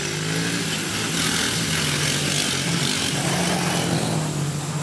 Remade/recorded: recorded